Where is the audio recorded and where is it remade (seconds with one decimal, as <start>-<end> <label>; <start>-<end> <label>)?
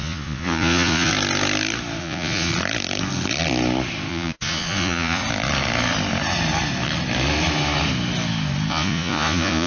0.0-1.1 remade; 1.1-2.0 recorded; 2.0-2.5 remade; 2.5-4.1 recorded; 4.1-5.2 remade; 5.2-8.7 recorded; 8.7-9.7 remade